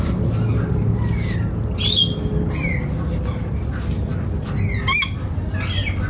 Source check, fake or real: real